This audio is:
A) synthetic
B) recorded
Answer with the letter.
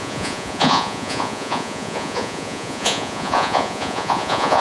A